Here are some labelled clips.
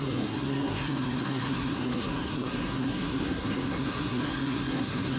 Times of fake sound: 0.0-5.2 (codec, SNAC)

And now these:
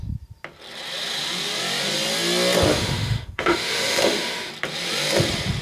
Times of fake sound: 2.7-4.5 (autoencoder, DAC-VAE)